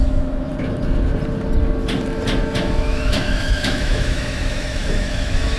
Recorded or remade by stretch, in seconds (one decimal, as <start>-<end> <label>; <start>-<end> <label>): 0.0-0.5 remade; 0.5-2.6 recorded; 2.6-5.6 remade